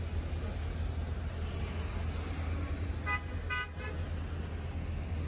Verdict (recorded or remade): recorded